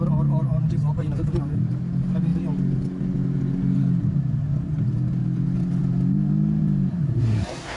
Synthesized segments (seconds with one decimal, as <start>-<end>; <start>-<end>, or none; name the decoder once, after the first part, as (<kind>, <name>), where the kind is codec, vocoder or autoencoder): 6.9-7.8 (codec, SNAC)